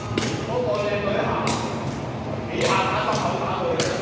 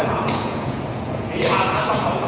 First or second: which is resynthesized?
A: second